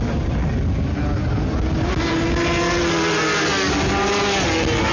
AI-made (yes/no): no